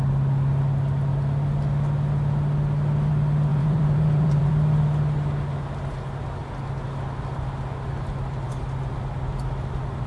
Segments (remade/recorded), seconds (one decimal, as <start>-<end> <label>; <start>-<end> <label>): 0.0-3.5 recorded; 3.5-4.5 remade; 4.5-10.1 recorded